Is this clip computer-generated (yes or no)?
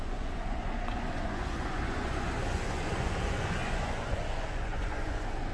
yes